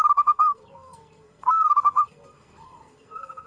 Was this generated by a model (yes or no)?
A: yes